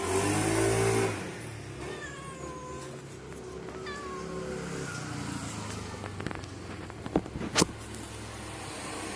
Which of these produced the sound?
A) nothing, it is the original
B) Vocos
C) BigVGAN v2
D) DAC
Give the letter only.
A